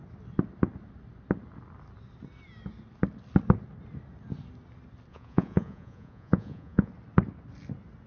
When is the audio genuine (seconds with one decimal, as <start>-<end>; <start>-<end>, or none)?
0.0-5.1; 6.9-8.1